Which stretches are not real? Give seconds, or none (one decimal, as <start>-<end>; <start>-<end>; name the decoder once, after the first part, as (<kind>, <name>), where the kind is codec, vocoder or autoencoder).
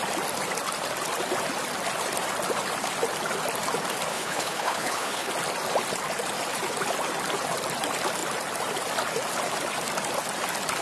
4.1-5.3 (codec, HILCodec)